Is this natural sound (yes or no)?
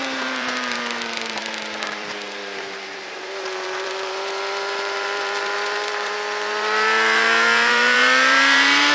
no